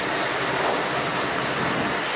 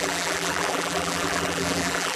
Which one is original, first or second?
first